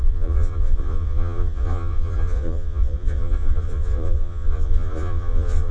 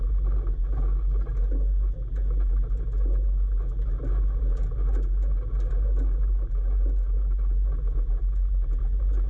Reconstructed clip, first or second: first